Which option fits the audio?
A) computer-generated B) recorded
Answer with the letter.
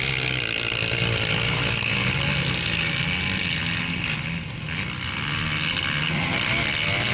B